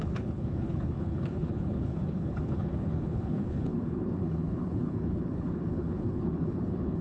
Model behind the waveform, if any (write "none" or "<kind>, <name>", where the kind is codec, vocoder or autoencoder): codec, HILCodec